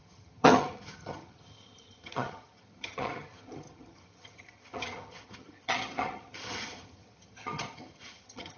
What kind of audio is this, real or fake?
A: fake